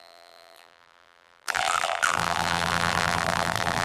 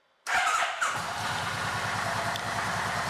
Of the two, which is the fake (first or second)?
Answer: first